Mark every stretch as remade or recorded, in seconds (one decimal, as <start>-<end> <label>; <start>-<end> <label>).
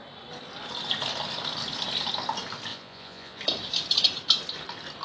0.0-2.7 recorded; 2.7-3.4 remade; 3.4-5.0 recorded